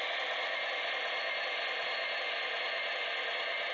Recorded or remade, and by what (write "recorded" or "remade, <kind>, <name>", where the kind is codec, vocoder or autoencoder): recorded